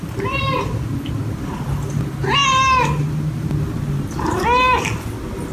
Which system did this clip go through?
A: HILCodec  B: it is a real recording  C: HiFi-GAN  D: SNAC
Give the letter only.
B